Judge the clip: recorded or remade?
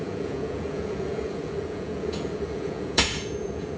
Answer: remade